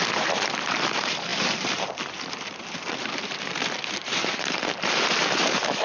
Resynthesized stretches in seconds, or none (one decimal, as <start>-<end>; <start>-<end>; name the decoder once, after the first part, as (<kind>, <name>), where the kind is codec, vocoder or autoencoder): 0.0-5.8 (vocoder, BigVGAN v2)